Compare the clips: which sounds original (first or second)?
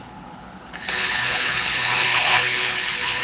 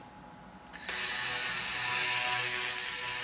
second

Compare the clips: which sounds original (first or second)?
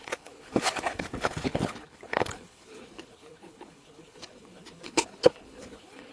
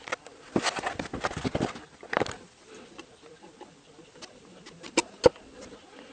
second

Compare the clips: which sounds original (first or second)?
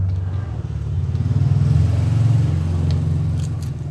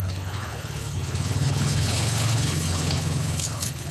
first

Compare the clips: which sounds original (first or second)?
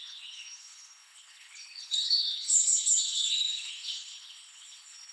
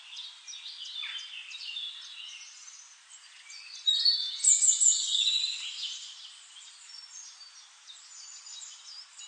second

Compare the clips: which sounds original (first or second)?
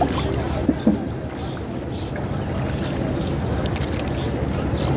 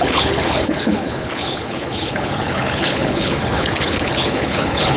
first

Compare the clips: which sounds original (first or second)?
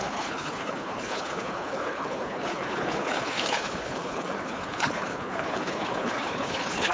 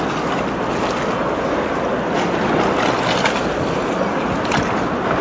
second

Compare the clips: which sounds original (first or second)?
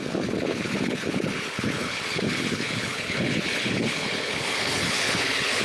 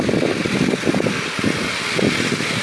second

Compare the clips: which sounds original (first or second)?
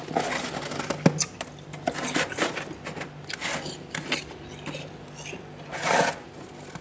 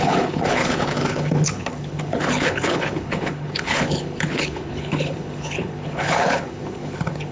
first